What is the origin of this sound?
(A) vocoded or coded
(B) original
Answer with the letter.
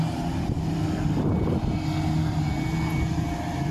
B